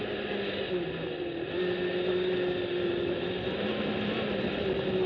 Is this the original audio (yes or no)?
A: yes